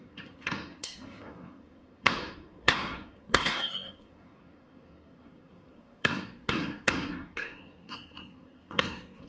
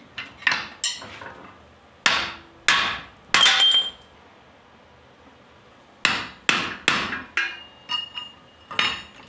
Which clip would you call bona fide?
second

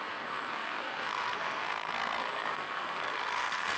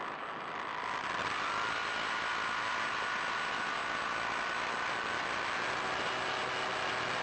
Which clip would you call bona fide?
second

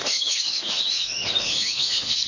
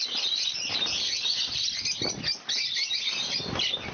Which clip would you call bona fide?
second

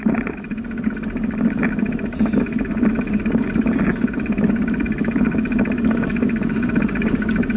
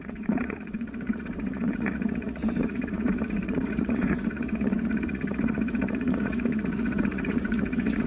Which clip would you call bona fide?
first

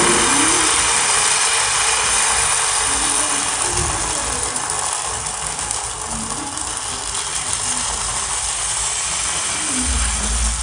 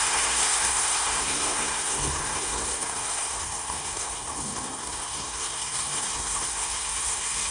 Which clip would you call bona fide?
first